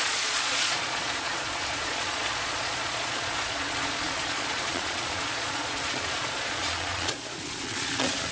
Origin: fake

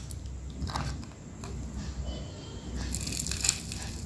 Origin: real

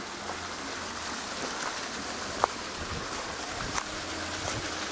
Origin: real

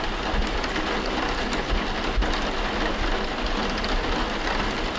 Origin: real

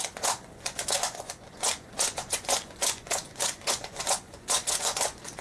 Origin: fake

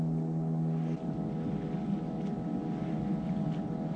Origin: real